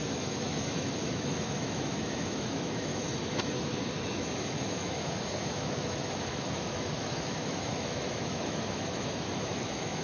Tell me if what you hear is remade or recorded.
remade